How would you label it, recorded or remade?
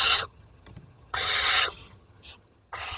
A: remade